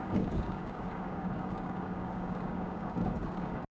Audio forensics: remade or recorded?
remade